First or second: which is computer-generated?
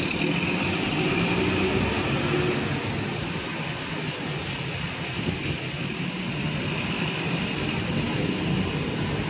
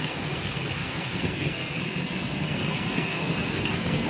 second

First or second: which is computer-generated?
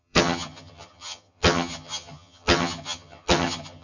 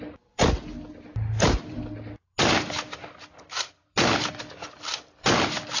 first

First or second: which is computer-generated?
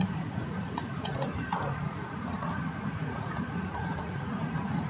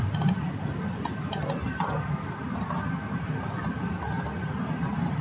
first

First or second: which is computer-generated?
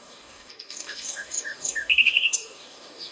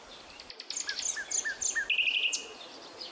first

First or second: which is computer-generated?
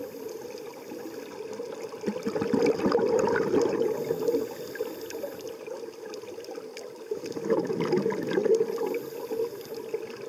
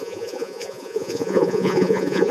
second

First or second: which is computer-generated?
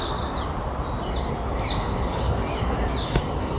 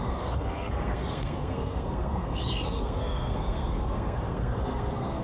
second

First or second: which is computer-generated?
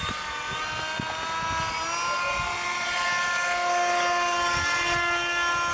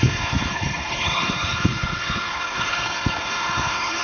second